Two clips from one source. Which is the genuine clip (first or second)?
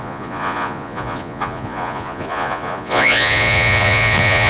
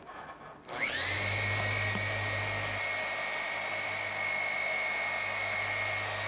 second